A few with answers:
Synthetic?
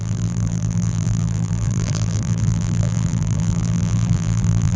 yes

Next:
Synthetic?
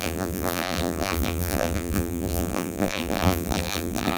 yes